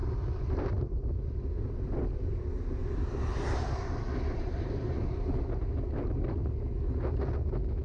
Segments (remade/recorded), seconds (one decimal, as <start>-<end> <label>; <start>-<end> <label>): 0.0-0.7 remade; 0.7-7.8 recorded